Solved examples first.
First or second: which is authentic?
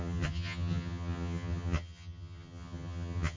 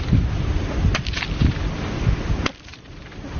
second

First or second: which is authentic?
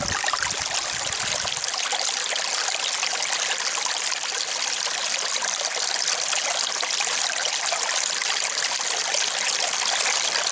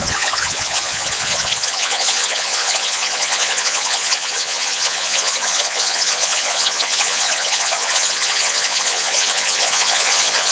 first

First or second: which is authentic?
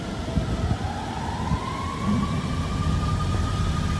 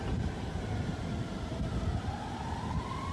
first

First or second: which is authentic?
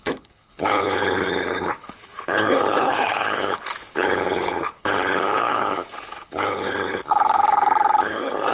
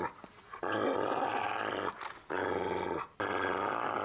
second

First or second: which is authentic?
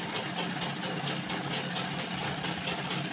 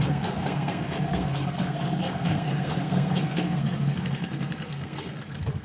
first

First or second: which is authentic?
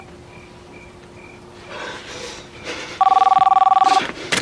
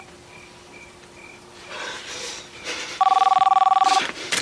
first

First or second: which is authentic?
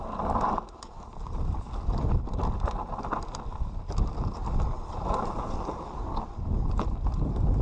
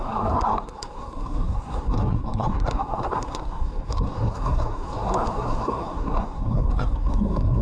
first